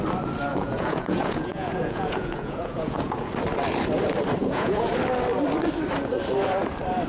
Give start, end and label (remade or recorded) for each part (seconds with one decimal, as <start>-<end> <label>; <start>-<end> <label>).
0.0-0.5 recorded; 0.5-3.3 remade; 3.3-4.4 recorded; 4.4-4.9 remade; 4.9-7.1 recorded